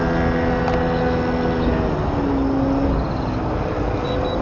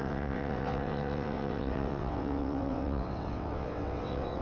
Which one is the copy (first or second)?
second